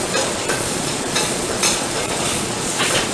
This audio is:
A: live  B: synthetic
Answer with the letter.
B